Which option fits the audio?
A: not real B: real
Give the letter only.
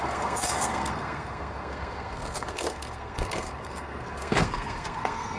A